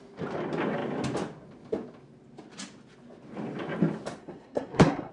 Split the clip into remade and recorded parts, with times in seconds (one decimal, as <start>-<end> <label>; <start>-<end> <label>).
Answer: 0.0-4.2 recorded; 4.2-5.1 remade